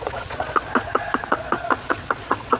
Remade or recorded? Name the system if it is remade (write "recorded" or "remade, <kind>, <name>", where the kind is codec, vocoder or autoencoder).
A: remade, vocoder, Vocos